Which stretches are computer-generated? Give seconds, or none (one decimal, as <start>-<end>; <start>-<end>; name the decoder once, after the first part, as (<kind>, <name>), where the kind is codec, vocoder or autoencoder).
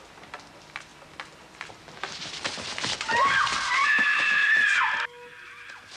3.8-4.5 (autoencoder, DAC-VAE)